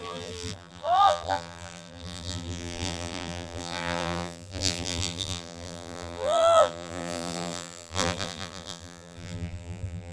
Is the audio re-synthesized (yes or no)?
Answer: yes